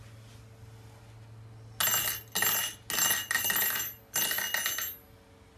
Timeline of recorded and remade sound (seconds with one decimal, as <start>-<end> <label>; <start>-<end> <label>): 0.0-5.6 recorded